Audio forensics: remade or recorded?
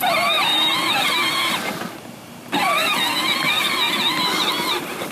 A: recorded